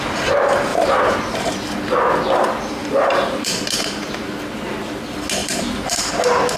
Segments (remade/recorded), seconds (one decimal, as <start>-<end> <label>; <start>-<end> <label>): 0.0-0.7 recorded; 0.7-1.5 remade; 1.5-2.8 recorded; 2.8-3.6 remade; 3.6-5.4 recorded; 5.4-6.1 remade; 6.1-6.6 recorded